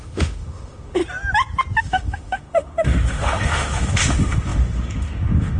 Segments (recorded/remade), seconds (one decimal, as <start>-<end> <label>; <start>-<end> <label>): 0.0-1.0 remade; 1.0-1.8 recorded; 1.8-5.6 remade